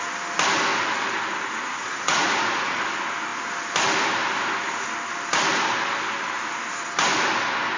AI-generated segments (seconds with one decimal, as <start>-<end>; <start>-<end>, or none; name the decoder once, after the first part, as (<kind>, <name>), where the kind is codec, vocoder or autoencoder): 1.8-2.8 (vocoder, Vocos)